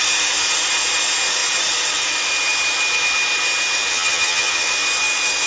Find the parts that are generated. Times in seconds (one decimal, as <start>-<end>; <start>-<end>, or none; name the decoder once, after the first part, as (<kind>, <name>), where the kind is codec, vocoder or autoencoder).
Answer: 3.9-4.7 (vocoder, HiFi-GAN)